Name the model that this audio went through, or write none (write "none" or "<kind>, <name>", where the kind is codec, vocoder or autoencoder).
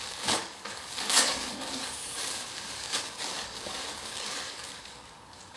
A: codec, DAC